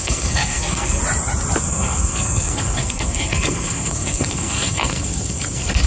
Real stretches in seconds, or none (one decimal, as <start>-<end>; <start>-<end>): 1.0-1.6